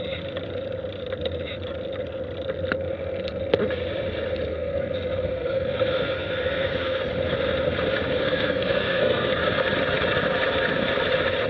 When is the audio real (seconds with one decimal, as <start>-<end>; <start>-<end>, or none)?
0.0-4.5; 7.0-8.2; 9.3-11.5